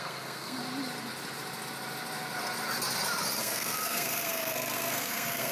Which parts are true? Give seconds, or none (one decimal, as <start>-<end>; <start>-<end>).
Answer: 0.6-3.4